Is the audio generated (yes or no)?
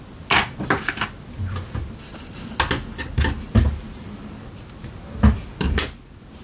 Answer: no